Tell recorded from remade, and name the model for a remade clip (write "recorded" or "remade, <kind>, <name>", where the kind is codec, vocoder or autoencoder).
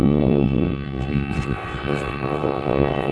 remade, vocoder, WaveNeXt